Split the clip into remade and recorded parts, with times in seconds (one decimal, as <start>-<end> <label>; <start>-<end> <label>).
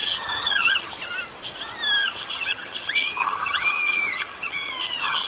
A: 0.0-0.9 remade; 0.9-2.0 recorded; 2.0-5.3 remade